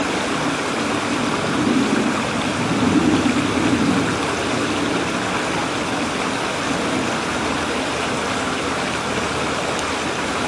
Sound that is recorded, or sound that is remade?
recorded